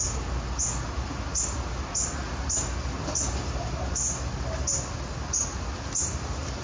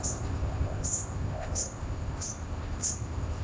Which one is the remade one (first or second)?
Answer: second